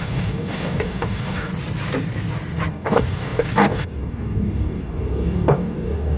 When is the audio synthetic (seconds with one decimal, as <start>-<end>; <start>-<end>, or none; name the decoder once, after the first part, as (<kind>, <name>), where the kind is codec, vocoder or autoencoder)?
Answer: 0.0-1.5 (codec, DAC); 2.7-6.2